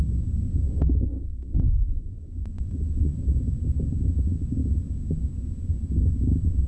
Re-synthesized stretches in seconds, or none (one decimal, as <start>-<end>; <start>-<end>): 1.9-3.2